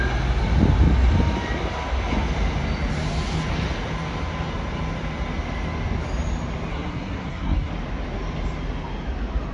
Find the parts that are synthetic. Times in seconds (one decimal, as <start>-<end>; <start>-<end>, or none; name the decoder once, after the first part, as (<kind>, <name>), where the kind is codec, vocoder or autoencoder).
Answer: 6.7-7.7 (codec, SNAC)